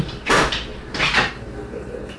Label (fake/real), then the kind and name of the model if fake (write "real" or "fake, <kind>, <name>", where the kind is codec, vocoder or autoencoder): real